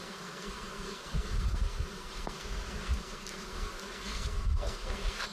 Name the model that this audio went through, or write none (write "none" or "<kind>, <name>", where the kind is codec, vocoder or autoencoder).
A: codec, SNAC